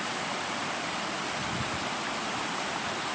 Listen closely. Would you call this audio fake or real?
real